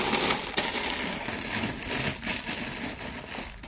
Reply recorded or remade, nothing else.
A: recorded